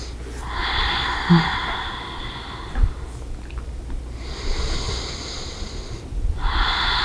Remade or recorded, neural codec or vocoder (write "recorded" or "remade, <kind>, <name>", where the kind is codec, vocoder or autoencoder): recorded